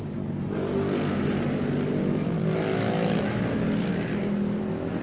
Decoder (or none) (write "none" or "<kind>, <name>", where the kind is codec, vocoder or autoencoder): none